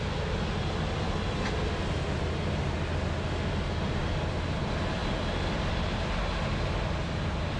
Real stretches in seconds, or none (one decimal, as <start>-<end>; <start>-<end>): 0.0-7.6